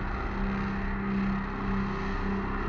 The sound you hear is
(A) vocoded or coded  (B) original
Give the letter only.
B